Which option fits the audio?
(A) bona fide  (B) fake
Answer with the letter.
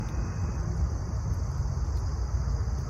A